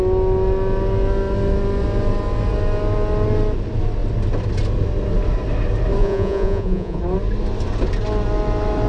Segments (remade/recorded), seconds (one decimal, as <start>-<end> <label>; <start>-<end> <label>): 0.0-6.0 recorded; 6.0-7.0 remade; 7.0-8.9 recorded